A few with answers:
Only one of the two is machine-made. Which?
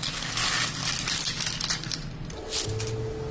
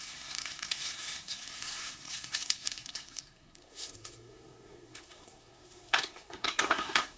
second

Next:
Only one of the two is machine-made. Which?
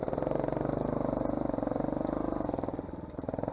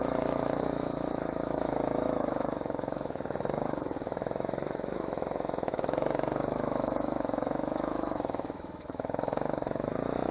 second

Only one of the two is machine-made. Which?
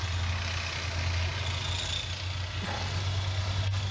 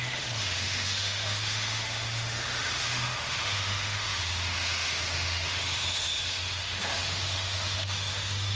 second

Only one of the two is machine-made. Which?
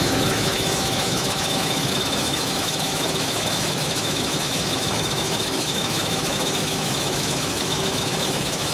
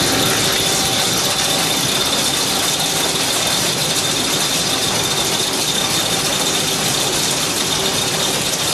first